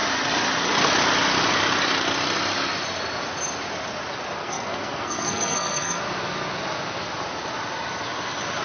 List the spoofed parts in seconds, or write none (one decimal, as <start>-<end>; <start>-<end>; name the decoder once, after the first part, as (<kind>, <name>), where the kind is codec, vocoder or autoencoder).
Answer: 4.4-6.0 (codec, SNAC)